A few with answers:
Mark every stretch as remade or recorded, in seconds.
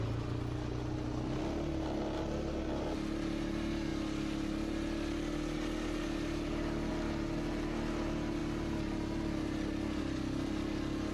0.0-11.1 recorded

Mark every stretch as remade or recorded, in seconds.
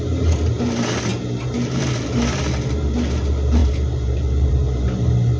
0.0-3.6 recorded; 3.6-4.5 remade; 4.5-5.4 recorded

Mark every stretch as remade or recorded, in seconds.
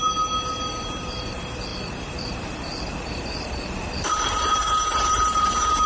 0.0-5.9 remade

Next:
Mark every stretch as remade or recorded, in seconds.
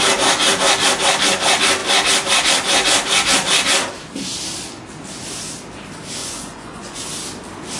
0.0-6.2 recorded; 6.2-7.0 remade; 7.0-7.8 recorded